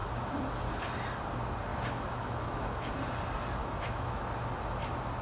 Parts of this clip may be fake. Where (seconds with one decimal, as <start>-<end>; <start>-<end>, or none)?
1.7-2.9; 3.6-4.2